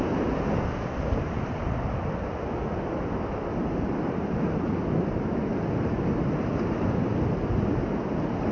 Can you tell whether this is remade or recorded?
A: recorded